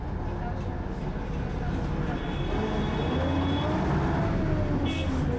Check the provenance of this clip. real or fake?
real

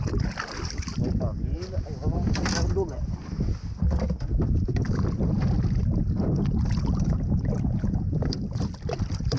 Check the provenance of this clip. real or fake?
real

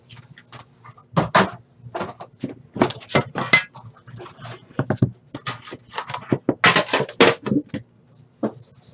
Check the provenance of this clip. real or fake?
real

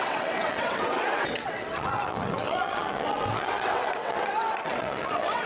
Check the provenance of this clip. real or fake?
fake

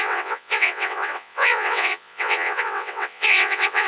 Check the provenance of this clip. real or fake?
fake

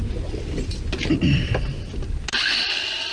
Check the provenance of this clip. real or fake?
real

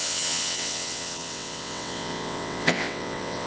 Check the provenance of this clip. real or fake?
fake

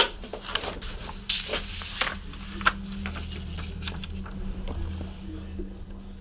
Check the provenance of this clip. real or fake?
real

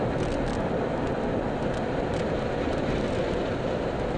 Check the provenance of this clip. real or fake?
real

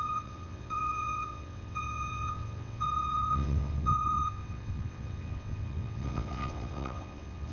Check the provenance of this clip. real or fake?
fake